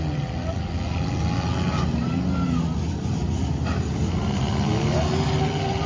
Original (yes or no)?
yes